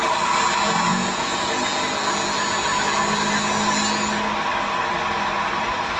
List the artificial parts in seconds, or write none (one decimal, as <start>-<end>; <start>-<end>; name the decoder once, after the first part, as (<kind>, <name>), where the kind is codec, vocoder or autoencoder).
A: 0.9-1.5 (vocoder, Vocos)